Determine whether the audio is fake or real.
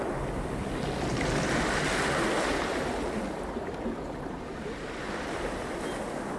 real